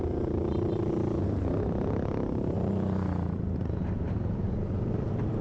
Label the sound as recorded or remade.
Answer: recorded